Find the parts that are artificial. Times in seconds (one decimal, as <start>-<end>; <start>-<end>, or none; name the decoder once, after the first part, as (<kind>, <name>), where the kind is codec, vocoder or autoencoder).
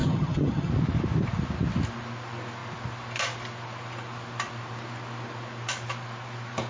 0.0-0.7 (vocoder, HiFi-GAN)